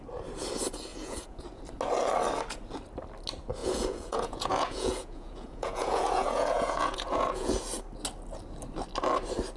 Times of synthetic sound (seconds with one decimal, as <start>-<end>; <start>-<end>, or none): 0.9-1.6; 3.6-7.6